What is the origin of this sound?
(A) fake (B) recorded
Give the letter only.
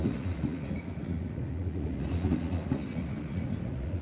A